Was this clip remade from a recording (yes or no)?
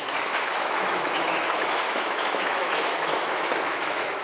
yes